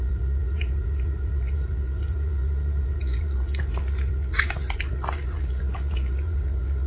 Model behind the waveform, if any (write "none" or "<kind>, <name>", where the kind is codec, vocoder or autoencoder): vocoder, Vocos